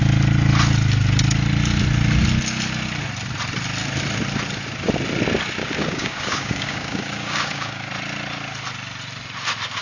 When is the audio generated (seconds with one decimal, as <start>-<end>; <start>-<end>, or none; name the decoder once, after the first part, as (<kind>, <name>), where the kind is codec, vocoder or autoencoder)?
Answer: 5.6-7.9 (codec, DAC)